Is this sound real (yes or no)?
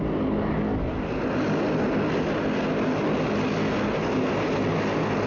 yes